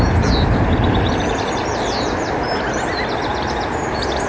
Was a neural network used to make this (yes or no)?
no